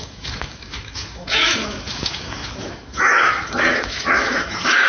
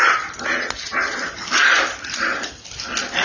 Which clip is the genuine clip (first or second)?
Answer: second